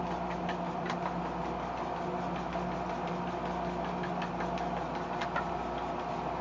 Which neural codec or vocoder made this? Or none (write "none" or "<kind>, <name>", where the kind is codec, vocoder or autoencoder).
none